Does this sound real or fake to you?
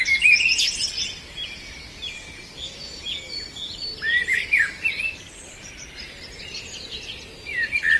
real